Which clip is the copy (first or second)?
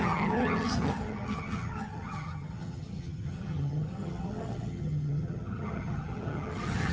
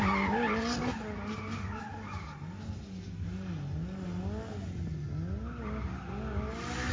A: first